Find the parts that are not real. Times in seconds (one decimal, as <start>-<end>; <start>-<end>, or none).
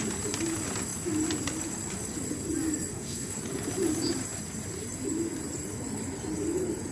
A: 2.9-3.4